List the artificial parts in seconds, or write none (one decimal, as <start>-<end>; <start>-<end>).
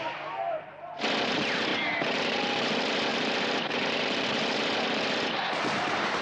3.1-3.7